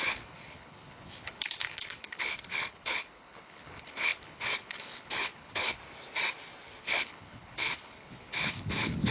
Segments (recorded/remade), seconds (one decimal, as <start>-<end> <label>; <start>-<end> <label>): 0.0-5.8 remade; 5.8-6.8 recorded; 6.8-9.1 remade